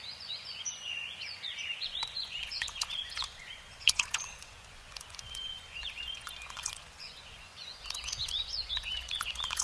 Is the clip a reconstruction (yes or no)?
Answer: yes